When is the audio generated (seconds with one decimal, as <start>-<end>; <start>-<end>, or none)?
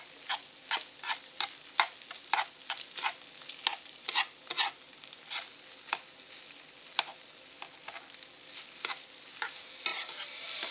9.9-10.7